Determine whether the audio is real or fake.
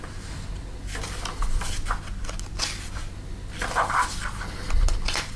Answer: real